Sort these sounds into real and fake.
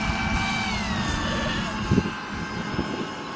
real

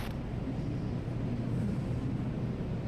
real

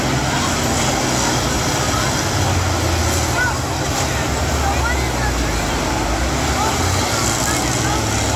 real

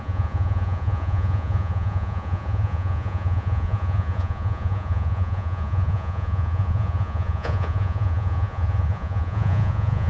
fake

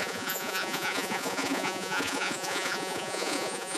fake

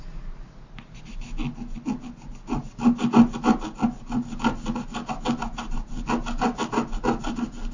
real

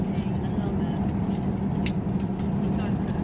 real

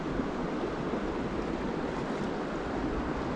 real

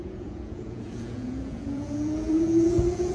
fake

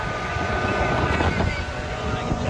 fake